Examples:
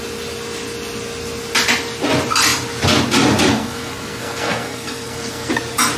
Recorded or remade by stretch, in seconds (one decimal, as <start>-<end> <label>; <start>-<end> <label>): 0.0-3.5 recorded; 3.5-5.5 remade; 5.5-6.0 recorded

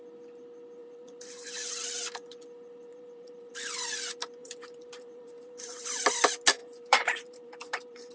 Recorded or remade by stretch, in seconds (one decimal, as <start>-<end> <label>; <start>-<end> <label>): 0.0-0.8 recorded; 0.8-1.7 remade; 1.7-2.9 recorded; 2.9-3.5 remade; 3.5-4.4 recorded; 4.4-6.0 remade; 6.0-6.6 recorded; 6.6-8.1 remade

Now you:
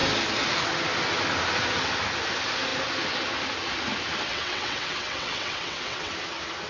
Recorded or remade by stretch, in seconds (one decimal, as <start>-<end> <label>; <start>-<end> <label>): 0.0-4.3 recorded; 4.3-6.1 remade; 6.1-6.7 recorded

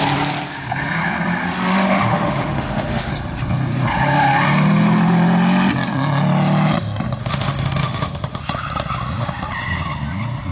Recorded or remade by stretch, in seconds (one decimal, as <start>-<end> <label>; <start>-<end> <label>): 0.0-1.4 recorded; 1.4-3.1 remade; 3.1-7.2 recorded; 7.2-8.4 remade; 8.4-10.5 recorded